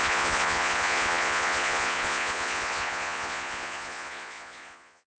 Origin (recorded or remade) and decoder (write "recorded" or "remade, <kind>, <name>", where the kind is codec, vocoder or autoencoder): remade, vocoder, Vocos